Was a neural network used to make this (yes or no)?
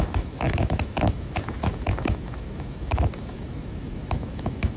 yes